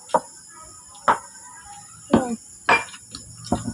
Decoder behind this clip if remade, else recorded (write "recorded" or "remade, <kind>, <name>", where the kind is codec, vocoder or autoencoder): recorded